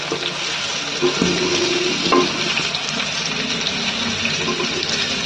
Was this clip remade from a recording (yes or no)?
no